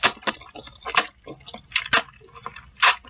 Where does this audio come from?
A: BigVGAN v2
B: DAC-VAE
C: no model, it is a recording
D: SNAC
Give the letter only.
C